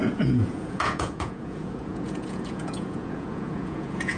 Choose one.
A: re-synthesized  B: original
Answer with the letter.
A